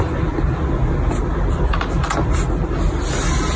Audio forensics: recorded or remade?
recorded